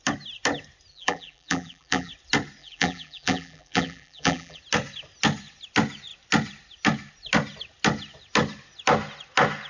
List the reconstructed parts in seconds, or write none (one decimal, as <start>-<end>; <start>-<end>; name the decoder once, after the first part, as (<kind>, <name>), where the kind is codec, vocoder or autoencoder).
0.9-2.1 (vocoder, BigVGAN v2); 2.6-4.6